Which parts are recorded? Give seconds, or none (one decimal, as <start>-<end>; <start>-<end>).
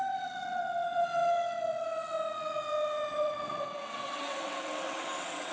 none